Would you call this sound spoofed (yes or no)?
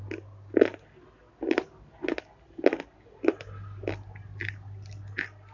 no